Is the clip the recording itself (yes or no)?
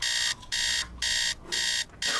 yes